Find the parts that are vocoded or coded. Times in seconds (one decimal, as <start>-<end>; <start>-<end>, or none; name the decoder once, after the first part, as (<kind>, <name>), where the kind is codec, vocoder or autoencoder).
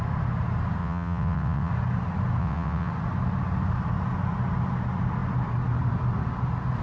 0.8-1.7 (vocoder, WaveNeXt); 2.4-2.9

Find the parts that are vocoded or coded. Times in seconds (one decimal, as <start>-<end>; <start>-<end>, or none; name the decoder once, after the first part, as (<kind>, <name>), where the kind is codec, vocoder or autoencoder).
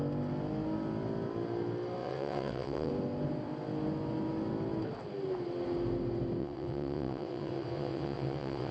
2.0-2.9 (vocoder, WaveNeXt); 6.4-8.7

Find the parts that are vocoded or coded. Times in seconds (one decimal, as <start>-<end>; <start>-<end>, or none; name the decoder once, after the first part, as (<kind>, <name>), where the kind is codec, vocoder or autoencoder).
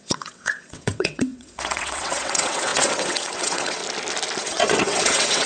0.0-3.8 (vocoder, WaveNeXt); 4.4-5.5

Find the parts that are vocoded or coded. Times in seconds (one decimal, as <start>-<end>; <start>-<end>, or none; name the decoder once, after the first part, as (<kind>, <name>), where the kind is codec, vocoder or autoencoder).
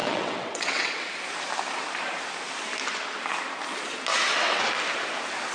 0.0-0.9 (vocoder, WaveNeXt); 4.1-4.6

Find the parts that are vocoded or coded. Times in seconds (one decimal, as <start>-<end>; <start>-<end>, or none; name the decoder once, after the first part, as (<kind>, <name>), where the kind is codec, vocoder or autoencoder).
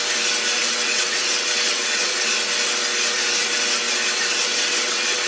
0.6-2.3 (vocoder, WaveNeXt); 4.3-5.3